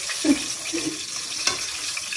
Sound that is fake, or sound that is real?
real